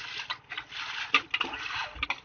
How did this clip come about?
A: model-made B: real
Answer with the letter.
B